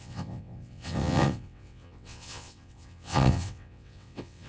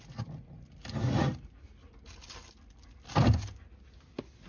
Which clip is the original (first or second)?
second